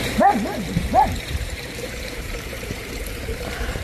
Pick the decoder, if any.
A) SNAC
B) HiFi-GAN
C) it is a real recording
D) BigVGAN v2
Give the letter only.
D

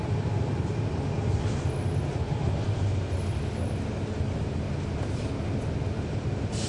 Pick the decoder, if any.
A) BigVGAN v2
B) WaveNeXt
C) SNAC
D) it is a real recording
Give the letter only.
D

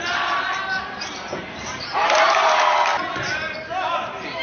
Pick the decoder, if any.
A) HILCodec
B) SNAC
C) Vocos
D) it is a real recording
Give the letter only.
D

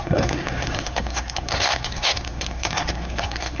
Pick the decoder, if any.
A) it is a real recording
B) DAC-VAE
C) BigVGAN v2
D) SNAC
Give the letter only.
D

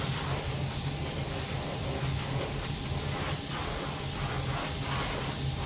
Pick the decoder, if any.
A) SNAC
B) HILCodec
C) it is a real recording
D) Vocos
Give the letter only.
C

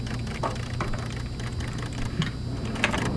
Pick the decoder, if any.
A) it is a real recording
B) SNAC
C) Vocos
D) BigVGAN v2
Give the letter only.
A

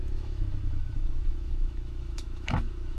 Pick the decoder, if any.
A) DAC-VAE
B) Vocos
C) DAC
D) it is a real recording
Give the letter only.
A